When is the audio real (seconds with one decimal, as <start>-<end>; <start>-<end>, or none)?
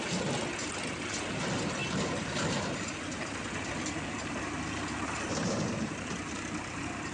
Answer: 0.0-7.1